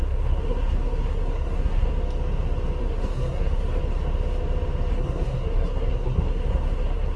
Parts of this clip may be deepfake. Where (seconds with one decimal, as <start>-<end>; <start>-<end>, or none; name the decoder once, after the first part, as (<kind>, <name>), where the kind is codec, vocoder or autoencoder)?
0.0-1.9 (codec, SNAC); 2.8-3.8; 4.9-7.2

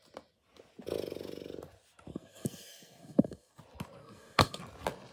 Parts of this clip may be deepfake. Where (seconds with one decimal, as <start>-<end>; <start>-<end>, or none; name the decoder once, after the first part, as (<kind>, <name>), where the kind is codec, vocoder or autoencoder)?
2.1-3.6 (codec, SNAC); 4.0-4.6